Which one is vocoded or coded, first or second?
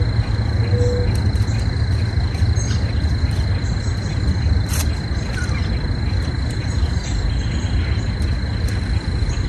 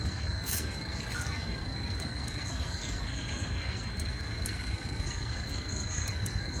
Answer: second